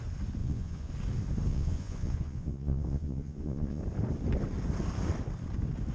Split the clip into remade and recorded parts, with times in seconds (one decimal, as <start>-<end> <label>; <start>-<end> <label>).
0.0-0.4 recorded; 0.4-0.9 remade; 0.9-1.5 recorded; 1.5-3.8 remade; 3.8-5.9 recorded